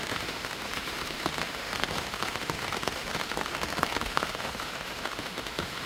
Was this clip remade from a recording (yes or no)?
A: yes